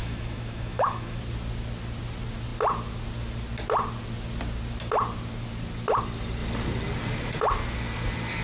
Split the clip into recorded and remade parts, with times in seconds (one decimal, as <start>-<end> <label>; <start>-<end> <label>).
0.0-1.2 remade; 1.2-8.4 recorded